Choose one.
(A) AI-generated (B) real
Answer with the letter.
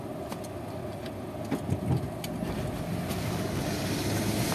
B